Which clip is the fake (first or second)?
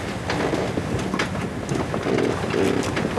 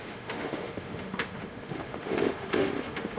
second